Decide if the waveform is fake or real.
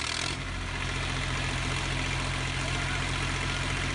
real